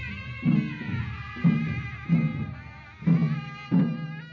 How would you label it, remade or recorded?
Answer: recorded